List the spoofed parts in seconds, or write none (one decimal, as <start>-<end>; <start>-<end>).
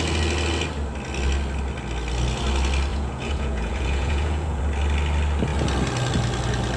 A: 2.9-4.6